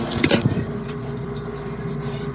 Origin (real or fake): fake